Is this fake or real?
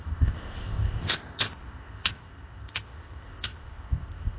fake